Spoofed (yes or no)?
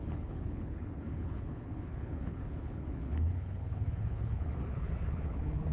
yes